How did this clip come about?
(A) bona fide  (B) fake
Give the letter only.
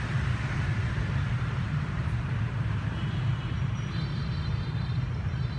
B